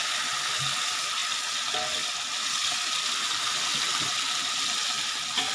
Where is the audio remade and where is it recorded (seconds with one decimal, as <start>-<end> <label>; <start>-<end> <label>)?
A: 0.0-5.5 recorded